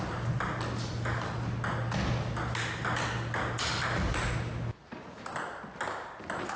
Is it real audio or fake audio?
real